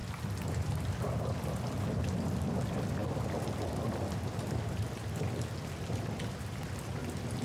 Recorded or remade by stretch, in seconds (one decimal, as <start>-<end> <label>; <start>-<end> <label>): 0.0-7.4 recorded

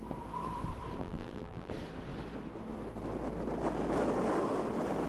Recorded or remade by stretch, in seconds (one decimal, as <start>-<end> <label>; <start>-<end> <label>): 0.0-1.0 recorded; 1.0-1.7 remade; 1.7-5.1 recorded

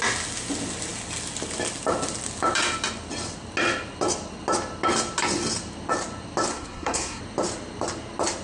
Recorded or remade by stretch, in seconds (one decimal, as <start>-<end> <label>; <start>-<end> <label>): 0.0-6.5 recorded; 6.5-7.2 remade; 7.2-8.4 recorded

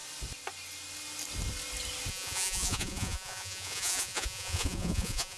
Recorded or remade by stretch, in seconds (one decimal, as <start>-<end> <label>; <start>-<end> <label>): 0.0-2.1 recorded; 2.1-5.4 remade

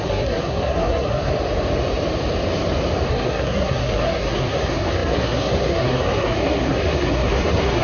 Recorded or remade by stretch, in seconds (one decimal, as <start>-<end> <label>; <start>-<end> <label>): 0.0-1.3 remade; 1.3-3.1 recorded; 3.1-7.8 remade